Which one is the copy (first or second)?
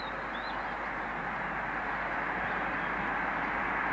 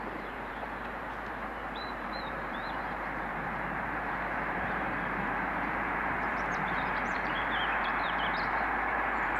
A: second